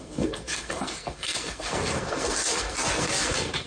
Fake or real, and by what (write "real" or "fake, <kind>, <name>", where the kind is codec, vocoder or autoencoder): fake, codec, SNAC